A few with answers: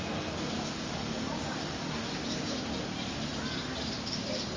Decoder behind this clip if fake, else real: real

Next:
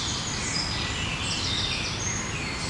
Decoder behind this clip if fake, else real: real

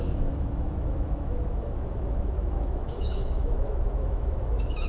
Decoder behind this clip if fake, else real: fake, autoencoder, DAC-VAE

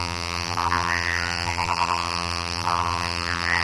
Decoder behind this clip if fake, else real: fake, vocoder, BigVGAN v2